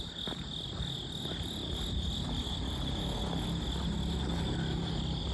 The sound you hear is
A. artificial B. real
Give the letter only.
B